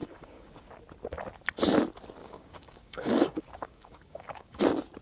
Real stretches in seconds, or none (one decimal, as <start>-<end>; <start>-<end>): 0.5-2.2; 4.6-5.0